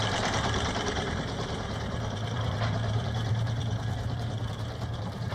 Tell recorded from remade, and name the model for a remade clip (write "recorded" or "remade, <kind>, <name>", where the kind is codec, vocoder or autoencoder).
remade, vocoder, BigVGAN v2